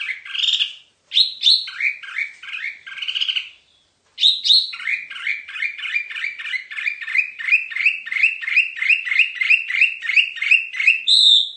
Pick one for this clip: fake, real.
real